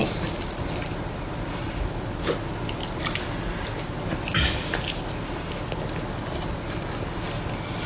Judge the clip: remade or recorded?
recorded